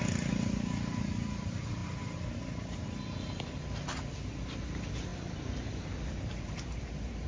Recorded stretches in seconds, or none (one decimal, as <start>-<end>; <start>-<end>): 0.0-7.3